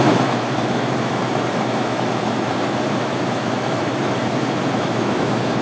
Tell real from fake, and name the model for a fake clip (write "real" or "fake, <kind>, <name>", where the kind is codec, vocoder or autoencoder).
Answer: fake, autoencoder, DAC-VAE